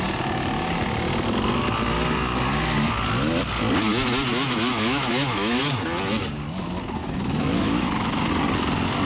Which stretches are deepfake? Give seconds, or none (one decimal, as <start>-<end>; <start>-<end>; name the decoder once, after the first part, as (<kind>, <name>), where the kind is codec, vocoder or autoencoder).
4.3-5.6 (autoencoder, DAC-VAE); 7.0-8.3